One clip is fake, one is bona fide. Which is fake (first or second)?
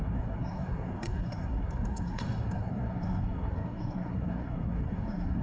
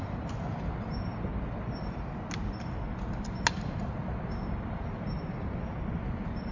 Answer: first